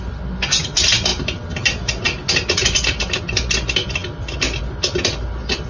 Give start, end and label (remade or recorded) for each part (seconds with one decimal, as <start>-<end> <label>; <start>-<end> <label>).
0.0-5.7 recorded